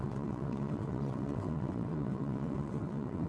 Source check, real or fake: fake